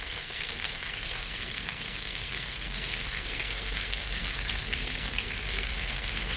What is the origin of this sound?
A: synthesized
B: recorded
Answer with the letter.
A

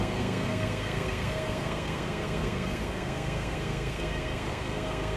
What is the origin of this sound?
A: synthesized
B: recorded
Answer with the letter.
A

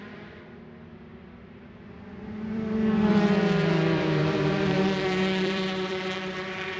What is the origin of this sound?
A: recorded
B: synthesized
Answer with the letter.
B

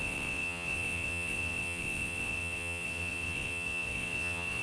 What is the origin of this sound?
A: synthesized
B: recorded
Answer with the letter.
A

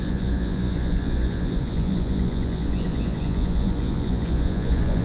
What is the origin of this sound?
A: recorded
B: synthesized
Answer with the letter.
B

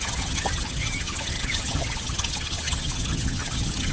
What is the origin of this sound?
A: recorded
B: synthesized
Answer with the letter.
B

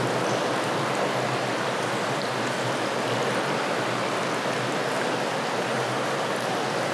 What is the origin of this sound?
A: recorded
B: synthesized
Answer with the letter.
A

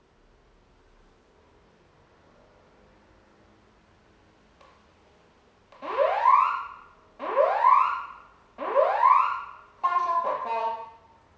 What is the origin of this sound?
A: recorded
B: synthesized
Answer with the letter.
A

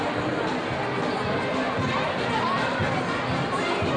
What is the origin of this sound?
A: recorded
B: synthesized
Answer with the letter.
A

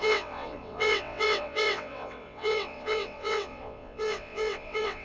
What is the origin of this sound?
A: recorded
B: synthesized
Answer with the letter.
B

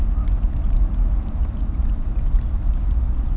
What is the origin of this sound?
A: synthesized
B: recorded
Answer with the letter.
B